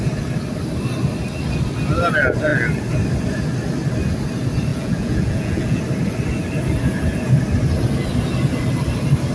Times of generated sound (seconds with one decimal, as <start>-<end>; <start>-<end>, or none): 4.7-5.8